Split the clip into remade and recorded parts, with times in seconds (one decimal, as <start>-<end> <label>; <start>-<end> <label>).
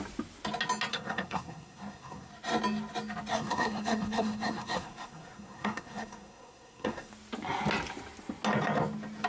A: 0.0-0.9 recorded; 0.9-2.3 remade; 2.3-3.3 recorded; 3.3-7.1 remade; 7.1-9.3 recorded